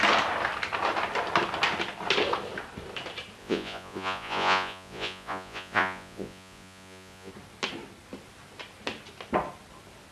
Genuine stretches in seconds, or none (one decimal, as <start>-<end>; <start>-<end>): 0.0-3.4; 7.3-10.1